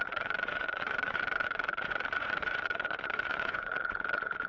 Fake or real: fake